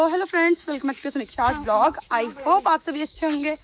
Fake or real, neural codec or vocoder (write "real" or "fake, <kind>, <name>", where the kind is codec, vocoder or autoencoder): fake, autoencoder, DAC-VAE